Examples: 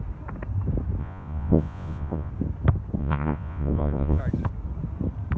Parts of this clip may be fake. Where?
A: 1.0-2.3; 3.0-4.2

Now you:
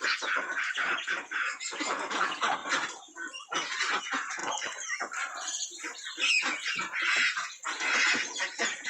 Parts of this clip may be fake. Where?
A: 0.0-2.6; 4.0-4.4; 6.3-8.9

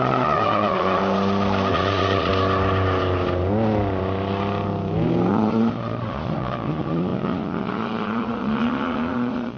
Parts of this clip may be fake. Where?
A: 0.0-1.0; 1.7-2.3; 5.3-9.6

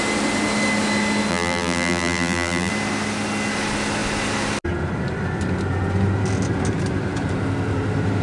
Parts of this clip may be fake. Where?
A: 1.3-2.7